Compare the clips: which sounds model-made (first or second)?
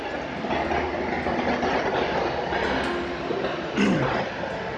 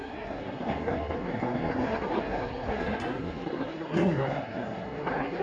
second